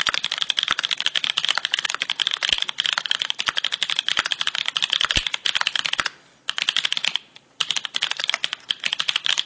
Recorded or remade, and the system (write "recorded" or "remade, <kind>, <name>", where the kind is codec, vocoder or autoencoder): recorded